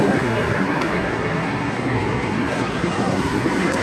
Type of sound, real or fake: fake